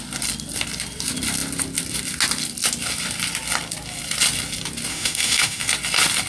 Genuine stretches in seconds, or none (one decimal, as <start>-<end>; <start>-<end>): 0.0-4.9; 5.7-6.3